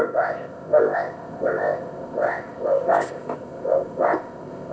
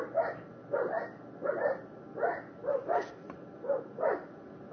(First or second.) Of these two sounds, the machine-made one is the first